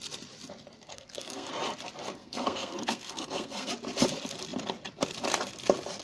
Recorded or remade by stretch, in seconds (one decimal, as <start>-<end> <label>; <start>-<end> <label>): 0.0-0.9 recorded; 0.9-1.5 remade; 1.5-2.2 recorded; 2.2-3.7 remade; 3.7-6.0 recorded